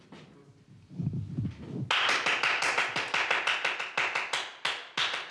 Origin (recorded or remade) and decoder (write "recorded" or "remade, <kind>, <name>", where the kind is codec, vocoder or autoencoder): recorded